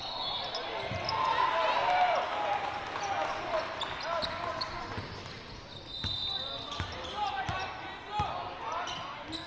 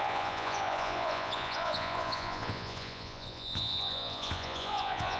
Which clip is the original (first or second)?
first